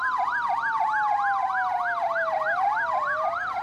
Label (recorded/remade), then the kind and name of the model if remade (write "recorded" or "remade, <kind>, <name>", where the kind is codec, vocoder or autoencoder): recorded